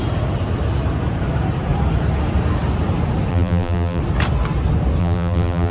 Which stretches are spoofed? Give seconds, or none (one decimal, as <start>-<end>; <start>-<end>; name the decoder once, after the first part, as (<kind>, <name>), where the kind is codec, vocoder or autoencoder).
3.3-4.0 (vocoder, BigVGAN v2); 5.0-5.7